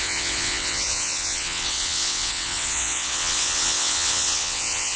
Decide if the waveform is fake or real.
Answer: fake